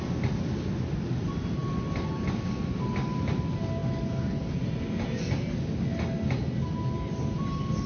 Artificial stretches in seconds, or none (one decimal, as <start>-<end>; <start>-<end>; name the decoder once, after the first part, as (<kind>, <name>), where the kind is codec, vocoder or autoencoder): none